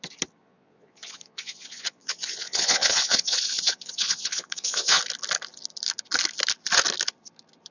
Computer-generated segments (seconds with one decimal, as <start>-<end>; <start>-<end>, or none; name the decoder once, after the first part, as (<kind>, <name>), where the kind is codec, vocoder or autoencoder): 0.4-5.0 (vocoder, Vocos)